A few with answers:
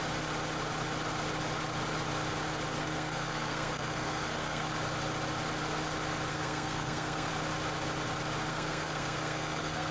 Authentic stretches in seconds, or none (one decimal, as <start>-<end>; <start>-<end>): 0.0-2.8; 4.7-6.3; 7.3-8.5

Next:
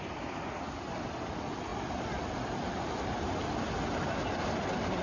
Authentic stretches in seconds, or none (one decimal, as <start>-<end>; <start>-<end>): 0.0-5.0

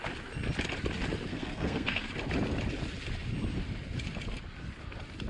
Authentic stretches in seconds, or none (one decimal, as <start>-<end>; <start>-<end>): 0.0-1.3; 2.1-5.3

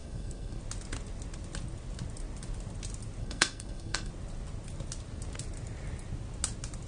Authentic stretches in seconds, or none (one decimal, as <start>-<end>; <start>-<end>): 0.6-3.2; 4.1-6.9

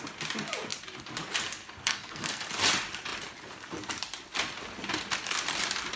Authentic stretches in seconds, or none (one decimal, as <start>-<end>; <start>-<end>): 0.0-1.8; 2.5-6.0

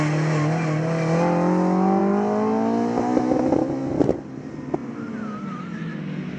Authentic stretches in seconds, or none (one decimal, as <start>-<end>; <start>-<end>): 0.0-6.4